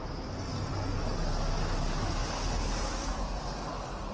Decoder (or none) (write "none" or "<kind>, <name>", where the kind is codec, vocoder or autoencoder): none